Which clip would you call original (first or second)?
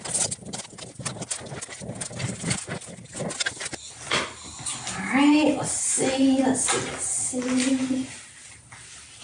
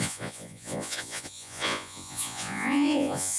first